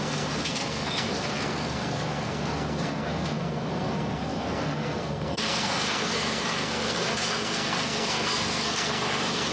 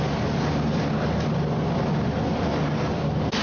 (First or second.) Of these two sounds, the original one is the second